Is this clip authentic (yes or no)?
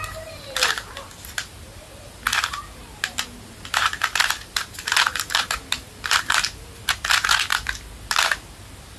no